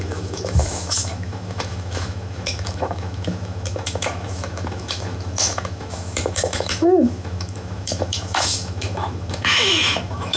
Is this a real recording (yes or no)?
no